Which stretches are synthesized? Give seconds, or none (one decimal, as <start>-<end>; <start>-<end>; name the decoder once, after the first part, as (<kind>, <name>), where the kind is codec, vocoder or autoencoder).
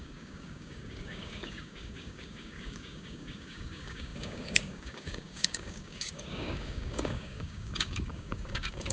0.0-8.9 (codec, DAC)